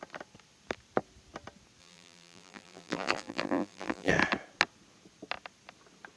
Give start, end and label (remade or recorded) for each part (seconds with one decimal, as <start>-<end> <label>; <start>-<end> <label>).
0.0-1.8 recorded; 1.8-4.1 remade; 4.1-6.2 recorded